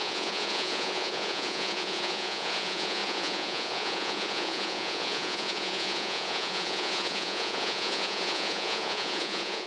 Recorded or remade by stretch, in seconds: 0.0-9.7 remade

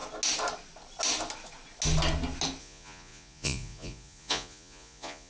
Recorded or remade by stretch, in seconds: 0.0-2.6 recorded; 2.6-5.3 remade

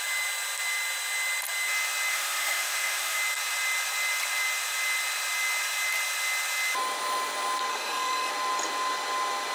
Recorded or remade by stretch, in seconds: 0.0-2.1 recorded; 2.1-3.2 remade; 3.2-7.7 recorded; 7.7-8.3 remade; 8.3-9.5 recorded

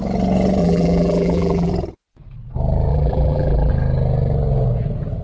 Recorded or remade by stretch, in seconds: 0.0-0.6 recorded; 0.6-1.7 remade; 1.7-2.9 recorded; 2.9-3.7 remade; 3.7-5.2 recorded

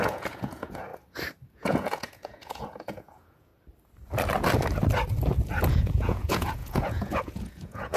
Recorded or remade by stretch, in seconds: 0.0-0.9 remade; 0.9-1.5 recorded; 1.5-3.5 remade; 3.5-5.6 recorded; 5.6-8.0 remade